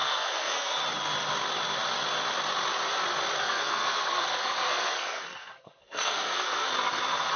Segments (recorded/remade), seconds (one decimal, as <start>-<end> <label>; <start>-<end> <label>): 0.0-0.8 remade; 0.8-3.4 recorded; 3.4-6.7 remade; 6.7-7.4 recorded

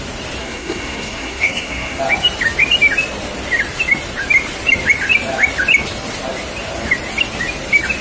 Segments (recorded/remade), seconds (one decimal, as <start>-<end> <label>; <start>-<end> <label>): 0.0-0.4 recorded; 0.4-2.0 remade; 2.0-8.0 recorded

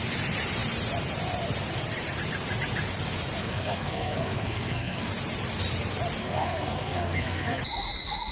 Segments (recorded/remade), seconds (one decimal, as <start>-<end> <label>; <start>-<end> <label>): 0.0-3.4 recorded; 3.4-5.1 remade; 5.1-6.2 recorded; 6.2-7.6 remade; 7.6-8.3 recorded